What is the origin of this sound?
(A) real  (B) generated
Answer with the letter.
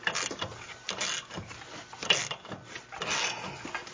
A